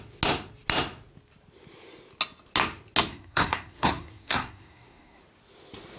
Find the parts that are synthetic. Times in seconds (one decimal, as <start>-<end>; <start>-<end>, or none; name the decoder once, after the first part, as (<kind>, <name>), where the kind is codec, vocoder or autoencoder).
3.1-5.2 (codec, SNAC)

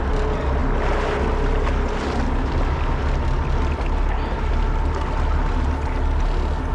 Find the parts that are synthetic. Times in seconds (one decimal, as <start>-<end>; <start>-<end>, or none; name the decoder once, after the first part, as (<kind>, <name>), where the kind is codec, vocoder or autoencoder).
none

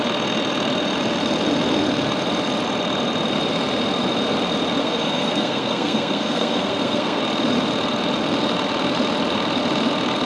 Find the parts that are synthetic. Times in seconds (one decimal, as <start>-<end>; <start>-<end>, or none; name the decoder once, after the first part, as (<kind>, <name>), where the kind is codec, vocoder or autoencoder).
4.8-7.2 (codec, SNAC)

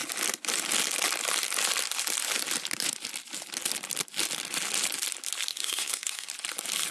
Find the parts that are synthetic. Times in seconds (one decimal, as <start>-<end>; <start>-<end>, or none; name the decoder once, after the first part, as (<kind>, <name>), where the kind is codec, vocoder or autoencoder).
5.5-6.3 (codec, SNAC)

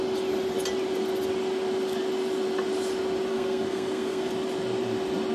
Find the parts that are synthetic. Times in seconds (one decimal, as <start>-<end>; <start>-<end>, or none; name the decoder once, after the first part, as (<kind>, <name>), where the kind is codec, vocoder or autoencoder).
3.3-4.3 (codec, SNAC)